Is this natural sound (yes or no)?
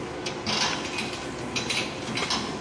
yes